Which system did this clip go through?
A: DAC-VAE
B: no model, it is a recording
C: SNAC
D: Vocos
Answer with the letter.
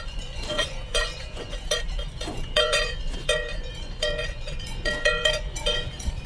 D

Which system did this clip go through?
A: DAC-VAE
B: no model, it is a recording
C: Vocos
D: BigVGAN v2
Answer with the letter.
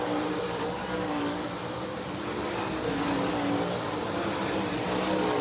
B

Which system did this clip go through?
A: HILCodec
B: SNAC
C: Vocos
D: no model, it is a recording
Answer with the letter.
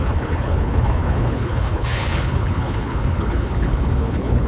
A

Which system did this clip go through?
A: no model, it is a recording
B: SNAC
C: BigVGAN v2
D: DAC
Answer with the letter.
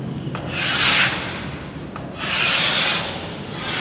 A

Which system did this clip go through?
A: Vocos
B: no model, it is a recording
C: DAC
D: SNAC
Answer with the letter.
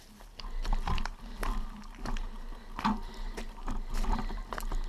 B